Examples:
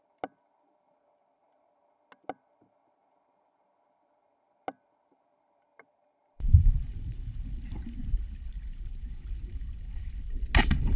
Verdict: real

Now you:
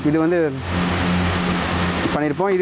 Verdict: real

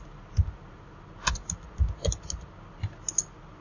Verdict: real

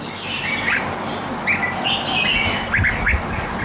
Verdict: real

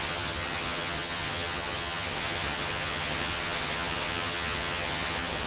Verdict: fake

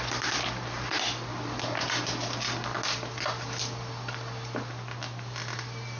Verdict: real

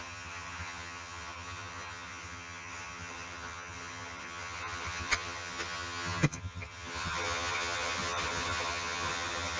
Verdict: fake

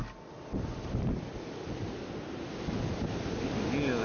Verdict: real